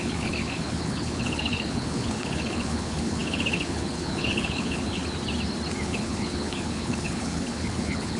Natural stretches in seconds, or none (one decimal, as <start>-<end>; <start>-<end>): 5.0-5.8